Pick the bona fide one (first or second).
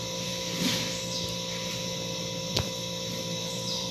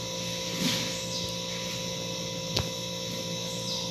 second